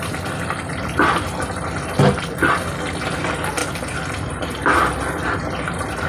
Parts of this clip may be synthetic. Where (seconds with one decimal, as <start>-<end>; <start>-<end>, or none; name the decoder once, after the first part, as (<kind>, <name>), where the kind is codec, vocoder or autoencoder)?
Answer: 3.6-4.4 (vocoder, BigVGAN v2)